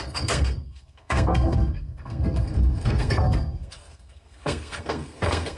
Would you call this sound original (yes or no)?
no